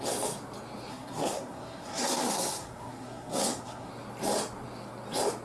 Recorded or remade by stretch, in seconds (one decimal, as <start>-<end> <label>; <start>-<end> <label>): 0.0-0.9 recorded; 0.9-3.9 remade; 3.9-5.4 recorded